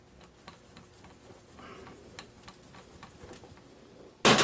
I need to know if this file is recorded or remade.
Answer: recorded